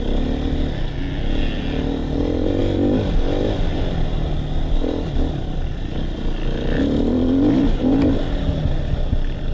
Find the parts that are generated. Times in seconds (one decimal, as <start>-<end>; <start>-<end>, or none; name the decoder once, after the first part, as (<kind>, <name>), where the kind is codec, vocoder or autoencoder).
none